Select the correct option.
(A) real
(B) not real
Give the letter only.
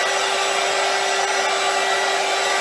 A